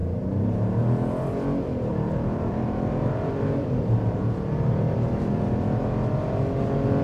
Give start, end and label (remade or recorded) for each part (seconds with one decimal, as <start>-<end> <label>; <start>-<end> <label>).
0.0-0.8 remade; 0.8-1.9 recorded; 1.9-4.2 remade; 4.2-7.0 recorded

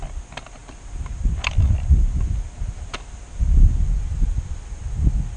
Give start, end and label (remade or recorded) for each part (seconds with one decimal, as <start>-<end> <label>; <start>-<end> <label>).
0.0-5.4 recorded

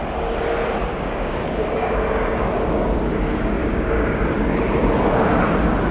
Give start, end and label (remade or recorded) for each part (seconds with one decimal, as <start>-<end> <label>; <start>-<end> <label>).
0.0-0.9 recorded; 0.9-3.0 remade; 3.0-3.6 recorded; 3.6-4.2 remade; 4.2-5.9 recorded

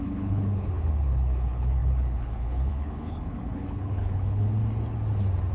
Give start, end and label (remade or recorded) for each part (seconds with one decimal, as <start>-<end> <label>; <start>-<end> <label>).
0.0-4.6 remade; 4.6-5.5 recorded

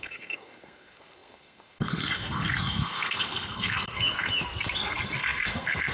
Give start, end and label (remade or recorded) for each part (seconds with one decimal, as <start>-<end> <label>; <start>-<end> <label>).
0.0-5.9 remade

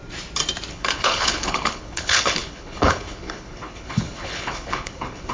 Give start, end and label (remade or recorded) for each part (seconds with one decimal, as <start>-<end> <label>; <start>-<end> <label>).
0.0-0.7 recorded; 0.7-5.3 remade

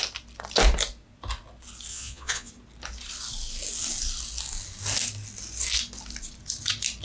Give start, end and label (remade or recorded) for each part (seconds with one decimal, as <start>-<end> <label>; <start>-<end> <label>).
0.0-1.9 recorded; 1.9-2.5 remade; 2.5-7.0 recorded

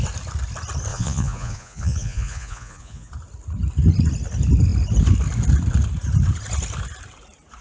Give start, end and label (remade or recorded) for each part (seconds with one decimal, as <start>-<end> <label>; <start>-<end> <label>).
0.0-0.9 recorded; 0.9-3.1 remade; 3.1-7.6 recorded